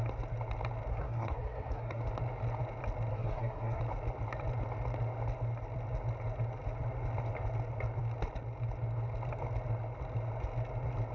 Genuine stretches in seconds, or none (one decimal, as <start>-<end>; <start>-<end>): 0.0-0.9; 2.0-3.1; 3.8-11.1